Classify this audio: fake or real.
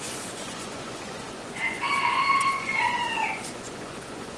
fake